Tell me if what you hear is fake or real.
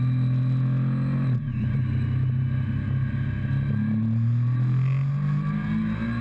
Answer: real